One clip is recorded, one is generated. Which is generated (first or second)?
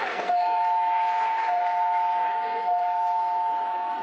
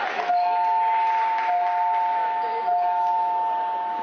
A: first